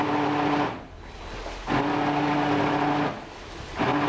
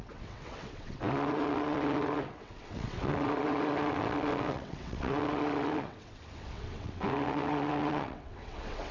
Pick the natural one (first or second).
first